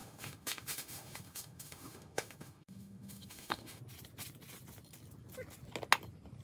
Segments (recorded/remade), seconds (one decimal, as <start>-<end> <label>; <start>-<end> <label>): 0.0-3.8 remade; 3.8-6.4 recorded